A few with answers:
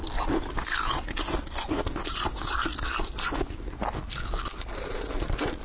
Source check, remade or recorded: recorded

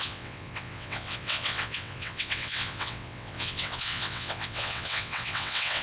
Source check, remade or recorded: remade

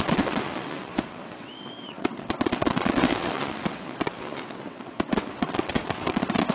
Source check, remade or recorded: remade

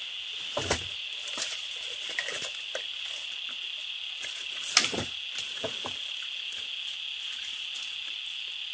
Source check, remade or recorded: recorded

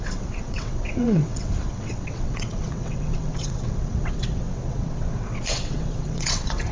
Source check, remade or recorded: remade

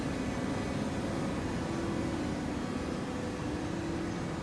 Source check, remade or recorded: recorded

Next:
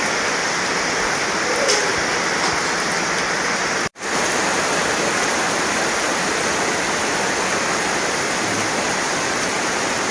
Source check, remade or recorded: recorded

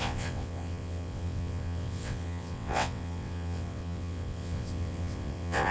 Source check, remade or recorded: remade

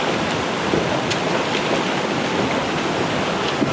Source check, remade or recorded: recorded